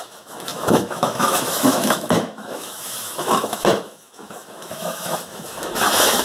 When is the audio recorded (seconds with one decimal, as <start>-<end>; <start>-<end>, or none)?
none